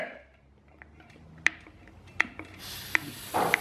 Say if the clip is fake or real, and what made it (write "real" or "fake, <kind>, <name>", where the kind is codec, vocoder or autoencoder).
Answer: real